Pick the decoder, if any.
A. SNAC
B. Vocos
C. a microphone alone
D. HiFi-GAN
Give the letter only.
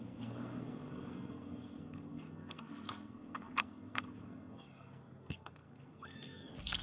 A